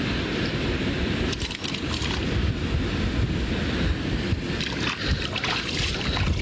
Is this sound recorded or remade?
recorded